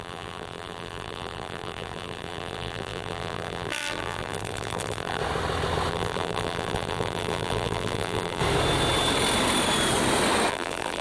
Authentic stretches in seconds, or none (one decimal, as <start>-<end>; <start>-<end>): 5.2-5.9; 8.4-10.5